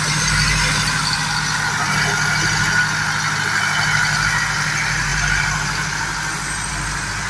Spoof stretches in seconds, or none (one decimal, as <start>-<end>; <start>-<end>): 5.1-6.7